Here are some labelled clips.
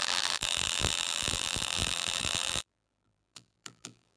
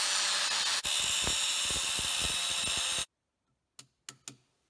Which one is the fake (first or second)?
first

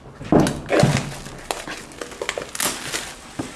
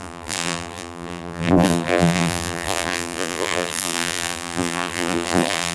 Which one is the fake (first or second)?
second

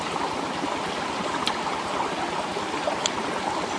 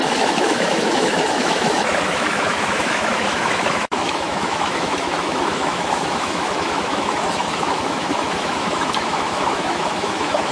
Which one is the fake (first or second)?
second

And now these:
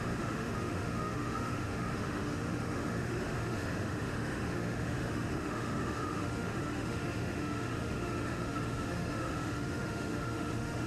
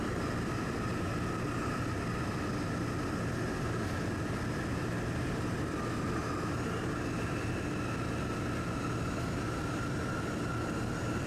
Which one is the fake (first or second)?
first